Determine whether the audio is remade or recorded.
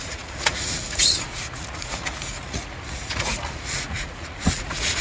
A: remade